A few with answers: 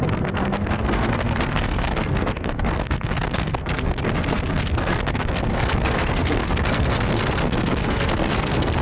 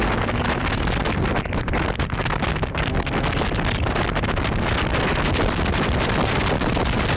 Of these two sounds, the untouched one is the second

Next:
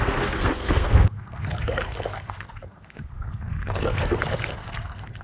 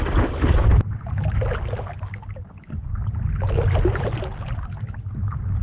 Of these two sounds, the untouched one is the second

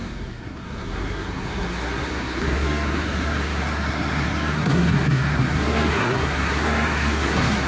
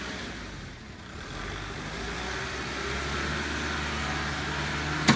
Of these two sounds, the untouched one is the second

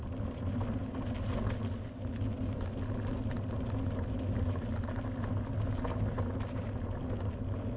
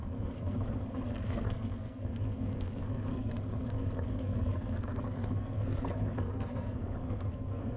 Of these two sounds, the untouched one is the first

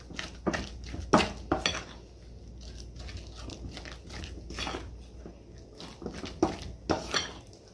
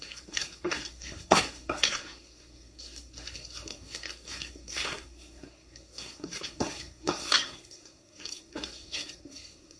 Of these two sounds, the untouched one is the first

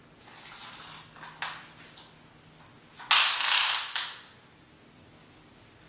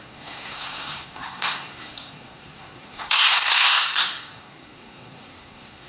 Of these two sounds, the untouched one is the first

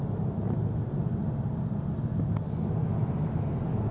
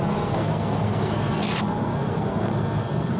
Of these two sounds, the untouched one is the first